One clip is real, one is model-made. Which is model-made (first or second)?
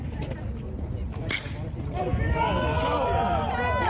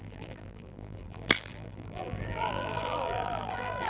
second